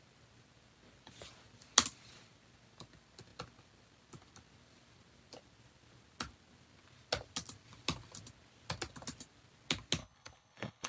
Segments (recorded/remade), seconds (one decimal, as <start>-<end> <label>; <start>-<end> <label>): 0.0-10.0 recorded; 10.0-10.9 remade